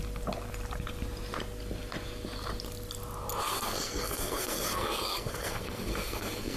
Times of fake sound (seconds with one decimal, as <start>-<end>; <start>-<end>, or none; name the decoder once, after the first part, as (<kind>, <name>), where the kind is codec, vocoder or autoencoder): 3.4-6.6 (codec, SNAC)